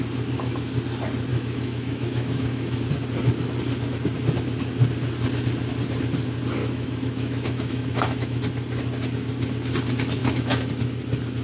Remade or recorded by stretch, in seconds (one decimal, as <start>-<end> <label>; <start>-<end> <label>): 0.0-1.3 recorded; 1.3-2.8 remade; 2.8-6.6 recorded; 6.6-8.4 remade; 8.4-10.2 recorded; 10.2-10.7 remade; 10.7-11.4 recorded